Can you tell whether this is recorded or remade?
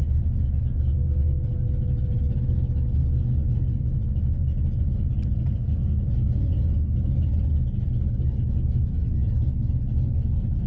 recorded